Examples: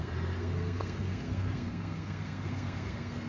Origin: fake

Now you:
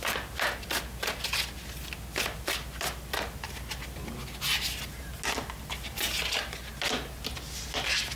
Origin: real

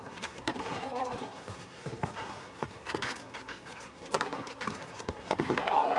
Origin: fake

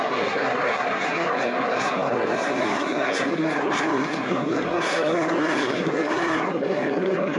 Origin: fake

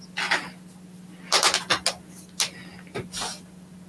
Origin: real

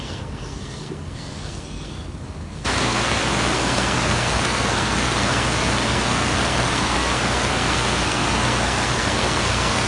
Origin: fake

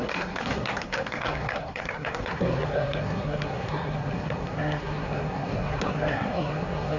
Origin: fake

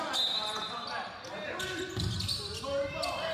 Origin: real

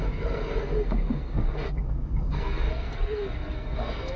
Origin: fake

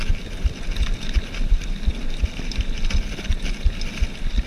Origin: real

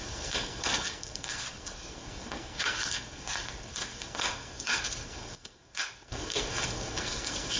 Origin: fake